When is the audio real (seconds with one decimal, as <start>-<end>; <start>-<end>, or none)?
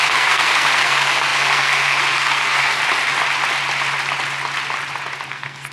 2.8-5.3